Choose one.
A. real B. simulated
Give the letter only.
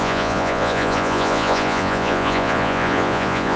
B